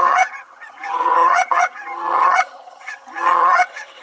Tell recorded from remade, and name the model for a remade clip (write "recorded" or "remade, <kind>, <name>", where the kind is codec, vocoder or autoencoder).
remade, vocoder, HiFi-GAN